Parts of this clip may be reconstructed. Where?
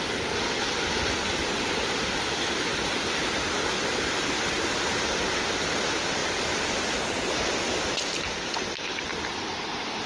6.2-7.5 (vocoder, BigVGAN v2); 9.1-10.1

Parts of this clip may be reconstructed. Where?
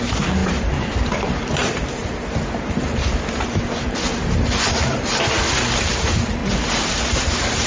0.0-6.4 (vocoder, BigVGAN v2); 7.2-7.7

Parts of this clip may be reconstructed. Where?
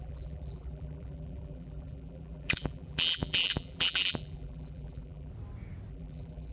0.0-5.3 (vocoder, BigVGAN v2); 5.9-6.5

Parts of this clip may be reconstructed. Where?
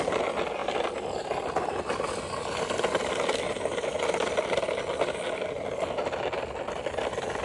none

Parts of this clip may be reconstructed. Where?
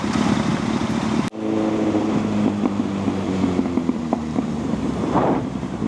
0.0-0.5 (vocoder, BigVGAN v2); 4.0-5.9